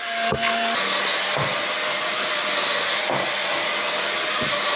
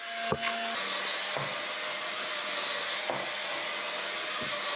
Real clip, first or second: second